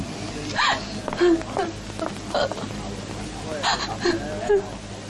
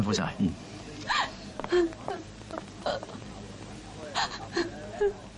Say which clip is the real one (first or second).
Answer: first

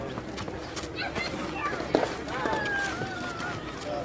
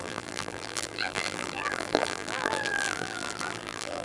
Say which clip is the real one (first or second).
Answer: first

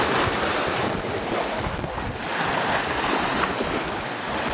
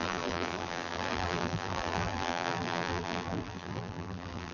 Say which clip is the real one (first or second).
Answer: first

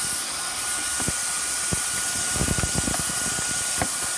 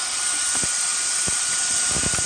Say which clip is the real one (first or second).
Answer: first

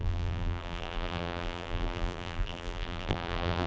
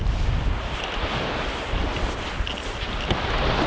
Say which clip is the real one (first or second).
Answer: second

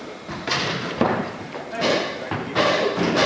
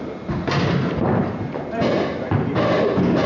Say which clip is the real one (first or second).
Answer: second